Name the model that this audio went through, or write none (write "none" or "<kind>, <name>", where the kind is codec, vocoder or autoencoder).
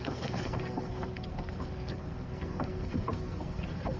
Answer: codec, SNAC